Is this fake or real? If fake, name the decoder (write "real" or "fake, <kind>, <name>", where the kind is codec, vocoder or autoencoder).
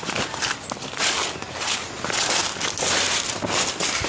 real